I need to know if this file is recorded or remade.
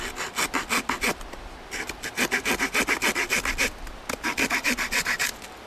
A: recorded